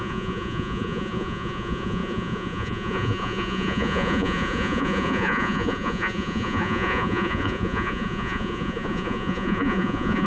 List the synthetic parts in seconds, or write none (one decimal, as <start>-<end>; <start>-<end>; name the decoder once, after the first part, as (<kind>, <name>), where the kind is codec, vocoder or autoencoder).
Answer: 0.0-10.3 (vocoder, Vocos)

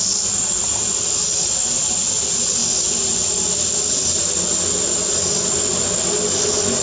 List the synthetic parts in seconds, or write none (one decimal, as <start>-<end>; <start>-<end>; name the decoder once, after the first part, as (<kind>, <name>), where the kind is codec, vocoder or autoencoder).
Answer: none

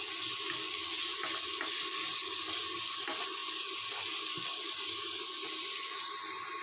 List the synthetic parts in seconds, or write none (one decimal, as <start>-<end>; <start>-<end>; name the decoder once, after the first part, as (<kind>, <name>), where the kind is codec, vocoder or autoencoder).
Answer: none

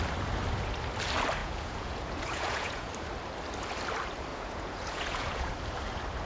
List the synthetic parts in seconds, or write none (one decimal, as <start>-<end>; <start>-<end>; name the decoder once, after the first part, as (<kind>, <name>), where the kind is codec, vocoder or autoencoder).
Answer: 1.4-2.9 (vocoder, Vocos); 4.3-5.5

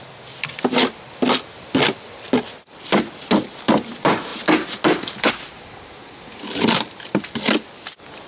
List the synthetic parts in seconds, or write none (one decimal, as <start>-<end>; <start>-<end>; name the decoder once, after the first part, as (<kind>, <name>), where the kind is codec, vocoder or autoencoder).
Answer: none

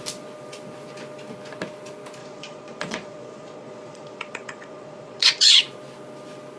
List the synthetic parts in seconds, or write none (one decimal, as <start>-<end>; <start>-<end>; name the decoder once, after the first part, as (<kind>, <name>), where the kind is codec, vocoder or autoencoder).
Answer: 2.2-5.6 (vocoder, Vocos)

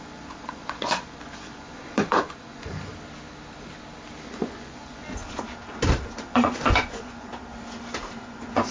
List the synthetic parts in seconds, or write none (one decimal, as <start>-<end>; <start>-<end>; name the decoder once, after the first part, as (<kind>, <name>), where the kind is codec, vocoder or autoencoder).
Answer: 0.0-2.9 (vocoder, Vocos); 4.3-5.0; 6.1-7.3; 8.2-8.7